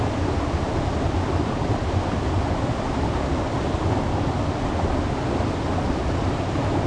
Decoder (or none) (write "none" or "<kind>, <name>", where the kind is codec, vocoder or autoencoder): none